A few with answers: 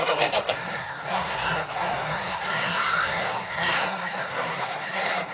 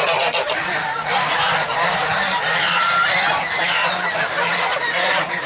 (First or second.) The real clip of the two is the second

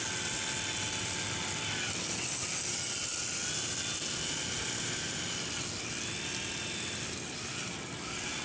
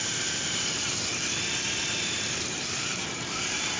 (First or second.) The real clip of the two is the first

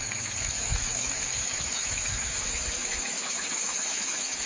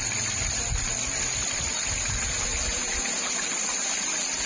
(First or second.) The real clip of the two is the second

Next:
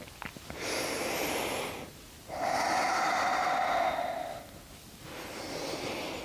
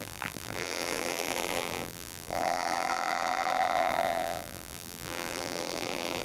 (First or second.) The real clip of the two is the first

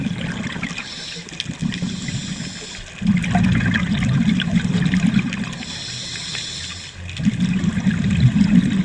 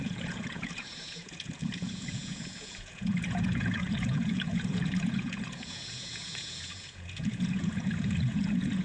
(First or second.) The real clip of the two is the first